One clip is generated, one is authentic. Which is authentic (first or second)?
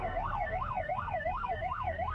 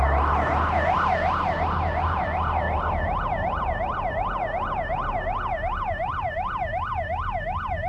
second